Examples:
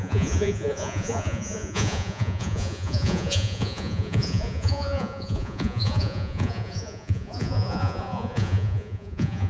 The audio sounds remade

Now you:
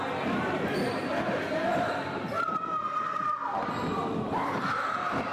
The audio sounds recorded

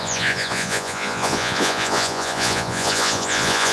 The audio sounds remade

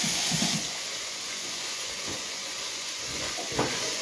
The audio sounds remade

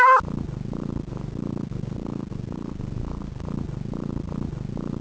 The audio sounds recorded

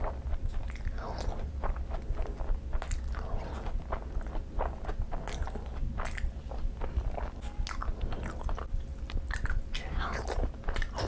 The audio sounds recorded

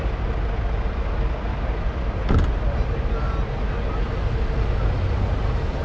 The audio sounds recorded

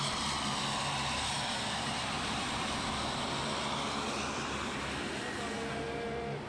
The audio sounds recorded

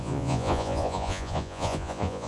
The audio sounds remade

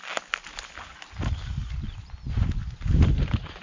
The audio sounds recorded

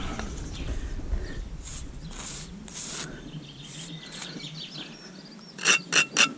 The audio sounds recorded